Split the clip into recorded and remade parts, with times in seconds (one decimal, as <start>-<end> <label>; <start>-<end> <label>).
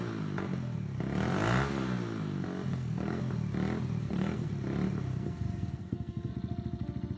0.0-2.7 recorded; 2.7-3.2 remade; 3.2-4.0 recorded; 4.0-4.5 remade; 4.5-5.1 recorded; 5.1-6.3 remade; 6.3-7.2 recorded